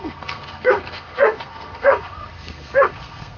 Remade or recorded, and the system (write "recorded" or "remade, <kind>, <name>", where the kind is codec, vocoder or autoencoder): remade, codec, SNAC